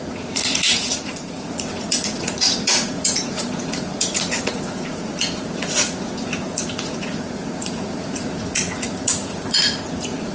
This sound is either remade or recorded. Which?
remade